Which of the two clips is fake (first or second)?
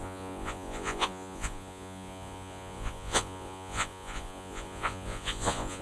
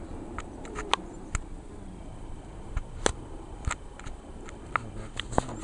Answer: first